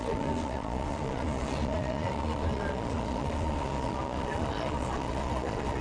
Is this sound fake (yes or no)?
yes